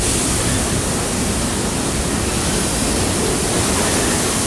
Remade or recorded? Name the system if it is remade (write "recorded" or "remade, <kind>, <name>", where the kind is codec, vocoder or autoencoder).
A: recorded